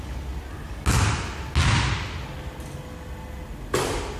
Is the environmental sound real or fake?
real